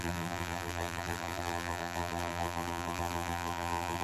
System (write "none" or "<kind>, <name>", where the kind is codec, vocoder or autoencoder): vocoder, BigVGAN v2